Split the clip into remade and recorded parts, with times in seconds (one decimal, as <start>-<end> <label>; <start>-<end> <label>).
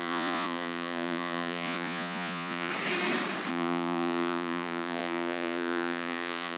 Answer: 0.0-2.7 remade; 2.7-3.5 recorded; 3.5-6.6 remade